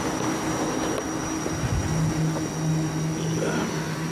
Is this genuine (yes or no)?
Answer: yes